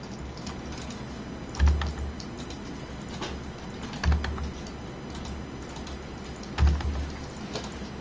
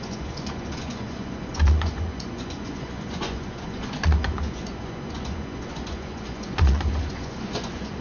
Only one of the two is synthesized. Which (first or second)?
second